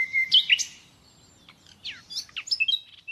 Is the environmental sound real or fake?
real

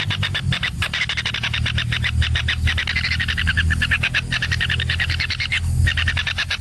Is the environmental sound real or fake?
real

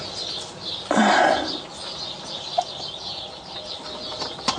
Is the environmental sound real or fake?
real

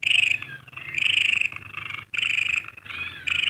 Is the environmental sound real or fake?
real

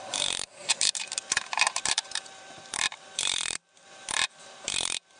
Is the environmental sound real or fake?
fake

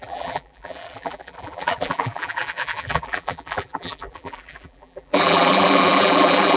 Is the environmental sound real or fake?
fake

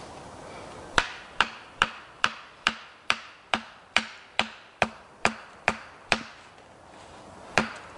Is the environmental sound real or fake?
fake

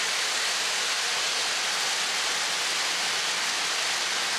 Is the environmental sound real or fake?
real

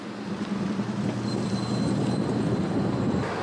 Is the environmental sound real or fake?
fake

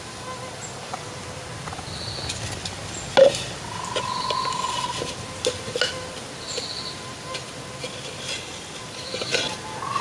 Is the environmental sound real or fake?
real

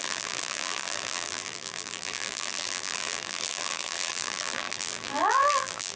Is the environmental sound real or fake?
fake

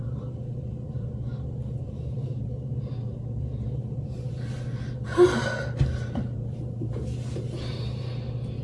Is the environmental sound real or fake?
fake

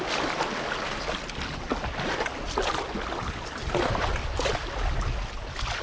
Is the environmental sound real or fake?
real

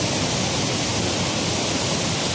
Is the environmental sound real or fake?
real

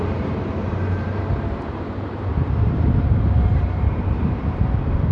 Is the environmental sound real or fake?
fake